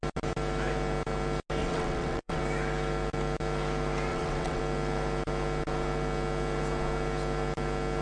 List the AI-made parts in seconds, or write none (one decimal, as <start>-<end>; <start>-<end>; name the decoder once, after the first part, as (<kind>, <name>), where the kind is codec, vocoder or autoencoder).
1.6-2.4 (vocoder, WaveNeXt); 4.1-4.6